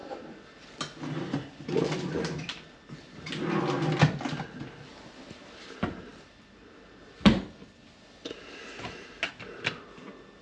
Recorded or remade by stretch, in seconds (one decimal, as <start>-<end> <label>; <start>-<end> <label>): 0.0-10.4 recorded